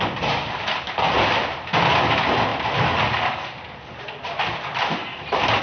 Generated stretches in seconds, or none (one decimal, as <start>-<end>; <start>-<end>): none